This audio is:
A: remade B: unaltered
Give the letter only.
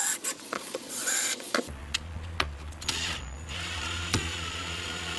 A